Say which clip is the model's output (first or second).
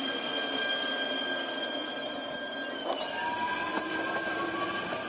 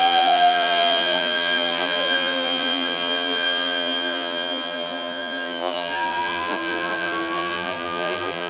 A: second